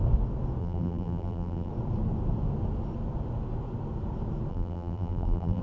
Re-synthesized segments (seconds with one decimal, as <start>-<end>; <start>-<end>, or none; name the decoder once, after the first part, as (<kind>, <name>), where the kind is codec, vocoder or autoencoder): 0.6-1.7 (vocoder, BigVGAN v2); 4.5-5.6